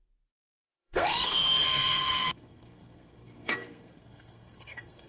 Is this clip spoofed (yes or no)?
yes